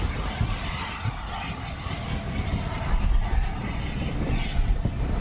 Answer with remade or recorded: recorded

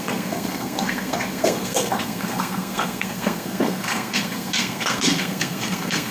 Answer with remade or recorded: remade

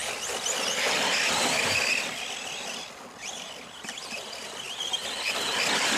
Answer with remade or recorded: recorded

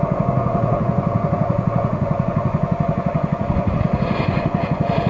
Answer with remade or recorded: remade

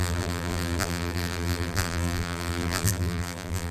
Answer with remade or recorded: remade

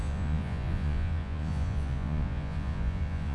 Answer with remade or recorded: remade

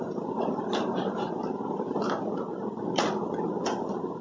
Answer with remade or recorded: recorded